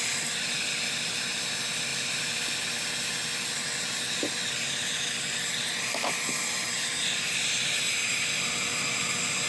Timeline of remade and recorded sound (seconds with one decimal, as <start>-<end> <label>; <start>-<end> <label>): 0.0-9.5 recorded